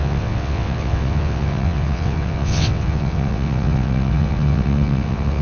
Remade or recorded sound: remade